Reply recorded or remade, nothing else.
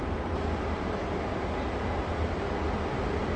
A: recorded